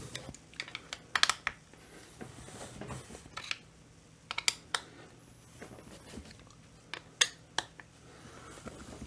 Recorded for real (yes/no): yes